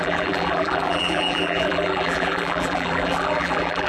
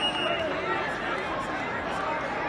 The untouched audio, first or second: second